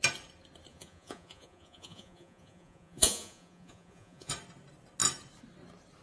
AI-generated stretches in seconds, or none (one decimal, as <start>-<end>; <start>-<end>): 0.7-4.3